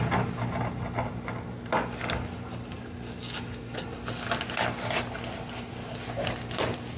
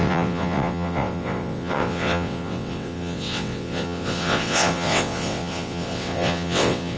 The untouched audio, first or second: first